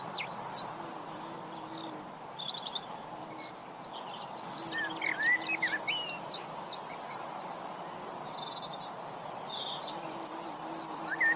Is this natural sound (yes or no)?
yes